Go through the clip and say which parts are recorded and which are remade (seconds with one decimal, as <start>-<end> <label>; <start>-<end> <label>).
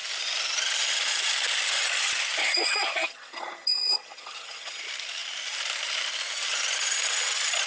0.0-2.4 recorded; 2.4-4.8 remade; 4.8-7.7 recorded